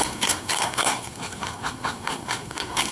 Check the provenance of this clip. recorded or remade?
remade